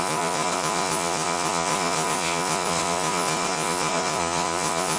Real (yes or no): no